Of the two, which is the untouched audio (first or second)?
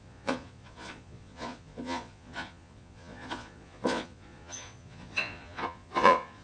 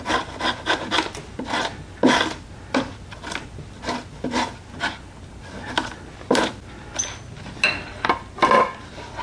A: second